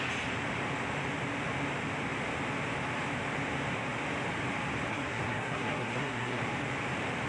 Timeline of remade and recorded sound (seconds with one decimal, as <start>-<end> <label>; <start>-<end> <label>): 0.0-4.9 recorded; 4.9-6.4 remade; 6.4-7.3 recorded